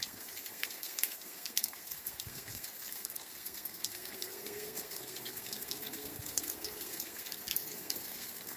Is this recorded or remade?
remade